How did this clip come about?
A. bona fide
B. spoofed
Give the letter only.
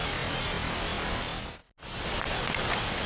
A